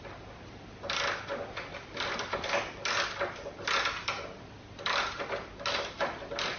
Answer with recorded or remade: recorded